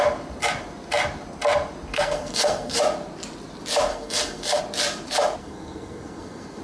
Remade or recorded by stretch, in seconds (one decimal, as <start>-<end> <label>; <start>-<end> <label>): 0.0-1.9 recorded; 1.9-2.8 remade; 2.8-3.9 recorded; 3.9-4.6 remade; 4.6-5.4 recorded; 5.4-6.6 remade